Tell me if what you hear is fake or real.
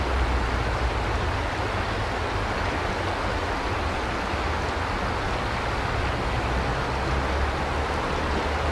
real